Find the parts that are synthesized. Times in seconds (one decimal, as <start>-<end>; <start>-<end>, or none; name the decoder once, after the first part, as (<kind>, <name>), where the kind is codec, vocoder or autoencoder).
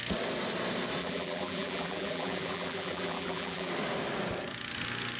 1.0-3.7 (vocoder, BigVGAN v2)